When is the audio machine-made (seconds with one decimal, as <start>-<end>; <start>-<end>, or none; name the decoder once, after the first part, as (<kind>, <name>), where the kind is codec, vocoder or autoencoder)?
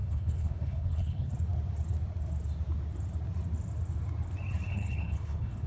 0.0-1.3 (codec, HILCodec); 4.7-5.7